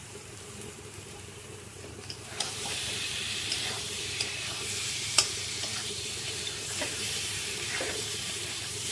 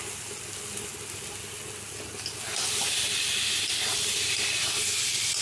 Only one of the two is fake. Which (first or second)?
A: first